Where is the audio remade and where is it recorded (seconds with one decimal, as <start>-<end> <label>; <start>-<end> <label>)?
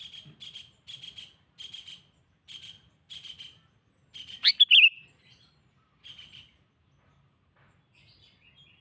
0.0-8.8 recorded